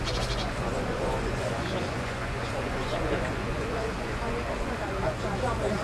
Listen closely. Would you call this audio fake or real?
fake